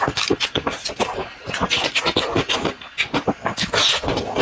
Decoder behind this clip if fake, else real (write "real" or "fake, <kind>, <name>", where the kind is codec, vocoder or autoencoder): real